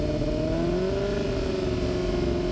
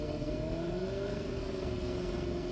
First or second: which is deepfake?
second